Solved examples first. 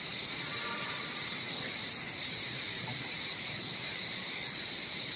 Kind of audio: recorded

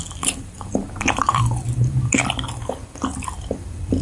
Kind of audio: remade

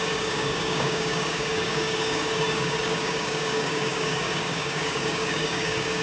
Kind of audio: remade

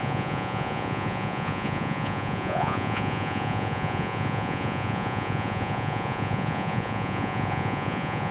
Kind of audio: remade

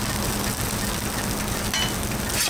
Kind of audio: recorded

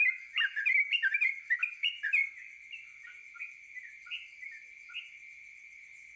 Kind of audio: recorded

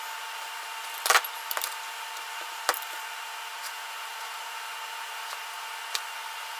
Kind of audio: recorded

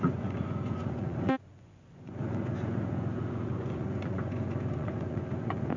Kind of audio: remade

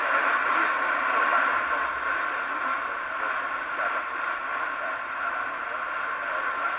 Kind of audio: recorded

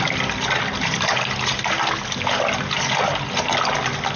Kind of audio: recorded